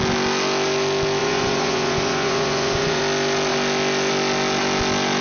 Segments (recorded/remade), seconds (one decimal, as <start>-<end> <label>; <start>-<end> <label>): 0.0-1.2 recorded; 1.2-3.0 remade; 3.0-5.2 recorded